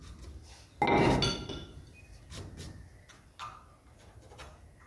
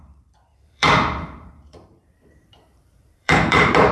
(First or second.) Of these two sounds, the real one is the first